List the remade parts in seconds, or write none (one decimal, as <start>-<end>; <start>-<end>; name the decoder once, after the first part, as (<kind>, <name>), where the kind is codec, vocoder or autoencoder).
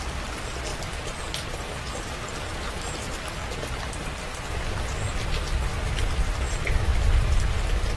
0.7-2.1 (vocoder, BigVGAN v2); 3.4-4.5; 6.9-7.6